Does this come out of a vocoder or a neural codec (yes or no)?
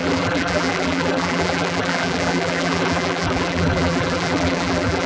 yes